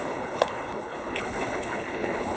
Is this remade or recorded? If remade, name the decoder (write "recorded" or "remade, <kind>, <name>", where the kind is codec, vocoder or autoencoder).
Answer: remade, codec, HILCodec